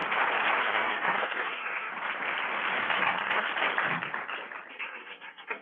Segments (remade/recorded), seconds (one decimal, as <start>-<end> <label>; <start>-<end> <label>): 0.0-0.6 recorded; 0.6-1.9 remade; 1.9-2.8 recorded; 2.8-3.5 remade; 3.5-4.7 recorded; 4.7-5.6 remade